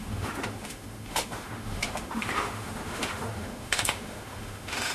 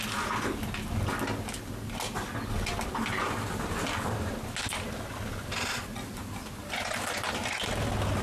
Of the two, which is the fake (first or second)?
first